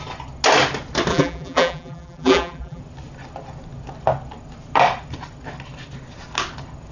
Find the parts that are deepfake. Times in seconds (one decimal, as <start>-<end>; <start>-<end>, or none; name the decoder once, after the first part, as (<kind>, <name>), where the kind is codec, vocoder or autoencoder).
1.1-2.8 (vocoder, BigVGAN v2)